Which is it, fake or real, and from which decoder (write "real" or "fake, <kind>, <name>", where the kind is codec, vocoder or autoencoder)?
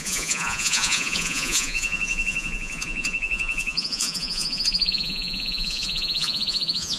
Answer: fake, vocoder, Vocos